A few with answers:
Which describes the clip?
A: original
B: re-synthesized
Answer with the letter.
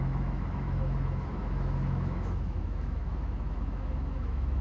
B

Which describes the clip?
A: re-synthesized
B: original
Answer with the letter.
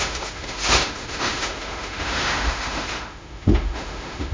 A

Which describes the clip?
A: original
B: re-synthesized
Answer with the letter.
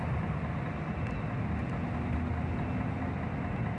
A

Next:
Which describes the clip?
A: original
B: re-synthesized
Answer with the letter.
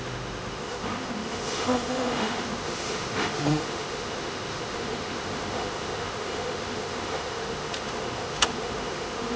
B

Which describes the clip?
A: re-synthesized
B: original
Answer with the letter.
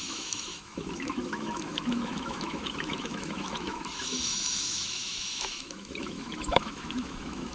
A